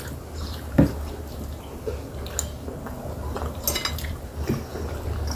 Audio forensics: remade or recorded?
recorded